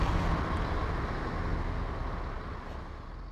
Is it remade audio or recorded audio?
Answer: recorded